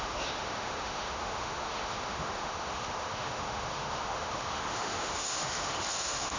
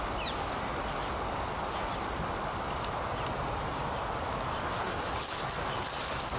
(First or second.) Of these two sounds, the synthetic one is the first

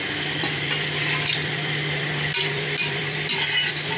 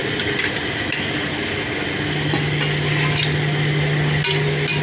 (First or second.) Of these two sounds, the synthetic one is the first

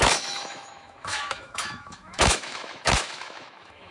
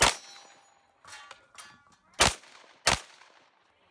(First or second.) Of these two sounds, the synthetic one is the first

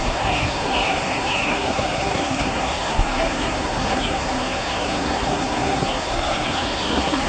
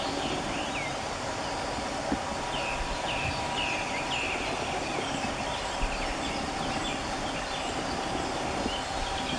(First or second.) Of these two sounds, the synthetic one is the first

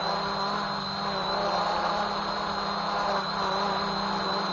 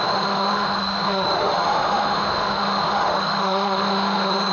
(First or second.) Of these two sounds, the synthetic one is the second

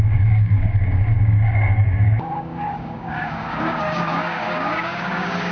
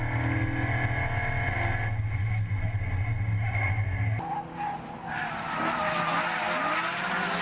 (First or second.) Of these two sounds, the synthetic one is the first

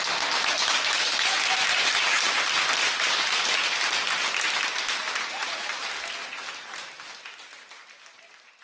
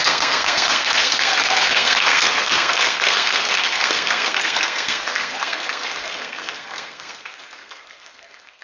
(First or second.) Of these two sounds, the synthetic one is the second